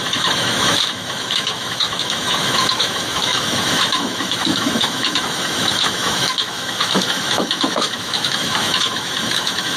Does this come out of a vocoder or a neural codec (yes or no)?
yes